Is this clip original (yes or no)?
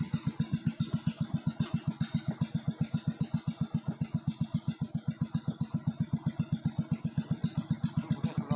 yes